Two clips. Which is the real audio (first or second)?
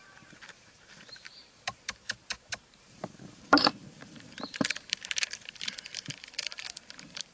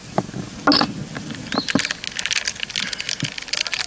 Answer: second